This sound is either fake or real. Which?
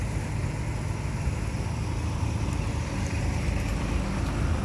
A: real